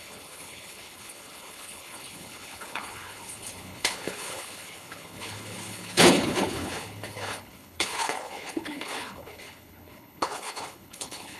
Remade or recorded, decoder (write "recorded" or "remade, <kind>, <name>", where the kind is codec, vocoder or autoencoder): remade, codec, HILCodec